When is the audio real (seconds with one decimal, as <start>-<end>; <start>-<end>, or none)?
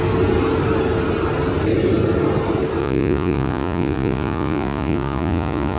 0.0-2.8